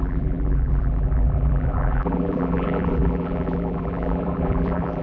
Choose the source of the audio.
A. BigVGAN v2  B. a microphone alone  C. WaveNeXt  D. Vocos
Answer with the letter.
A